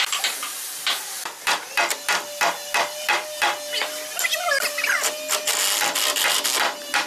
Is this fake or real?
real